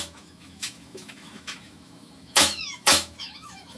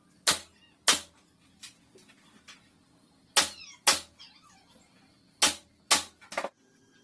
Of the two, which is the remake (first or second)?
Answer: first